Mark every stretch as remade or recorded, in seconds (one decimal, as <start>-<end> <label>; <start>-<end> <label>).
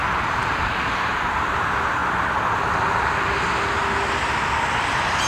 0.0-2.0 remade; 2.0-5.3 recorded